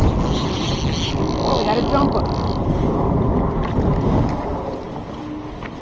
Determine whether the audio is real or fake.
real